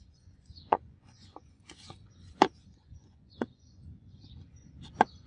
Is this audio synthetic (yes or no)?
yes